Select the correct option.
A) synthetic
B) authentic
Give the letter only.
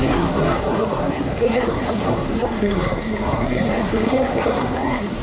A